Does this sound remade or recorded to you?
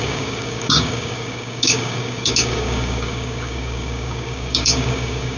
remade